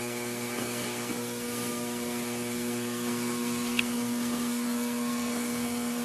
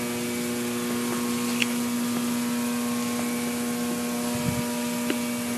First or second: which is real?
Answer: second